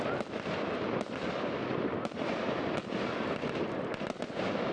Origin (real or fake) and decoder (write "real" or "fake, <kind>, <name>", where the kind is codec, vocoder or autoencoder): real